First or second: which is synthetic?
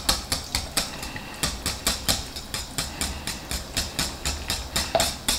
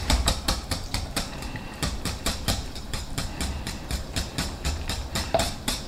second